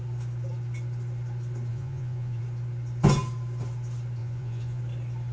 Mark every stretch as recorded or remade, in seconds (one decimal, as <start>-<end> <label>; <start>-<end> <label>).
0.0-1.7 recorded; 1.7-2.4 remade; 2.4-4.2 recorded; 4.2-4.8 remade; 4.8-5.3 recorded